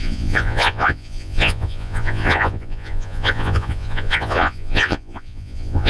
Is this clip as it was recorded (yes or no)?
no